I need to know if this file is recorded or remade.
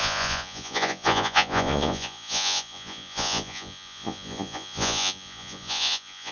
remade